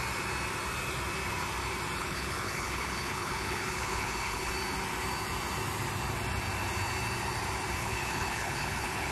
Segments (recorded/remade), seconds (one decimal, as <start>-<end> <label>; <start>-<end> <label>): 0.0-2.0 recorded; 2.0-4.5 remade; 4.5-7.8 recorded; 7.8-9.1 remade